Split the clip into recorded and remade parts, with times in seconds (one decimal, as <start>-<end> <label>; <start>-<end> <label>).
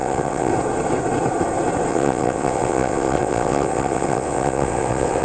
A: 0.0-0.5 remade; 0.5-1.9 recorded; 1.9-5.2 remade